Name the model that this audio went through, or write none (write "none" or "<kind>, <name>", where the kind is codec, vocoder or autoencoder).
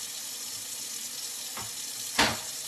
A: none